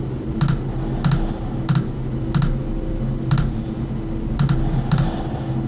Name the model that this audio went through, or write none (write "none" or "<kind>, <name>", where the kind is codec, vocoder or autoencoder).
none